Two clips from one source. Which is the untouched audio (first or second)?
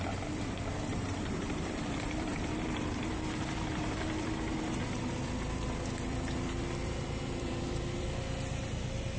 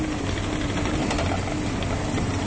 second